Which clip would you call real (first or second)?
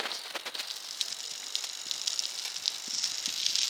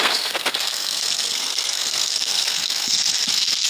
first